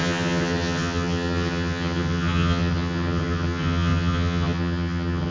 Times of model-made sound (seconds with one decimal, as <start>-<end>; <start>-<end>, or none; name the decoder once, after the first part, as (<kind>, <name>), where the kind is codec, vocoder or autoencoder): 0.0-5.3 (vocoder, HiFi-GAN)